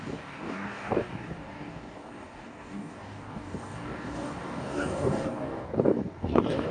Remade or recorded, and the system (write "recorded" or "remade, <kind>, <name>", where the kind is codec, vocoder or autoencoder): remade, codec, DAC